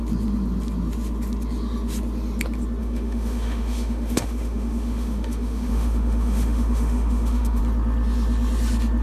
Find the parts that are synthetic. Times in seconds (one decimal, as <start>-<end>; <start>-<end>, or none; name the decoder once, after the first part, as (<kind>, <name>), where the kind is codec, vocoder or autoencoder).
2.8-7.6 (autoencoder, DAC-VAE)